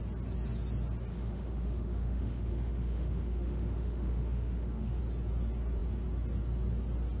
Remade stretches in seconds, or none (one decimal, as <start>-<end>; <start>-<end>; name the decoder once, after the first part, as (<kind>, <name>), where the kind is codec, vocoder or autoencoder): 1.1-5.0 (autoencoder, DAC-VAE)